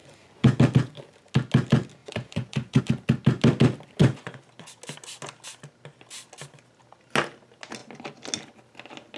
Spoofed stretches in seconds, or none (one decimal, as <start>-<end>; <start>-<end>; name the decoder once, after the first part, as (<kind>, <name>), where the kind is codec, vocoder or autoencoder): 0.0-0.6 (vocoder, Vocos); 2.0-2.8; 4.0-4.8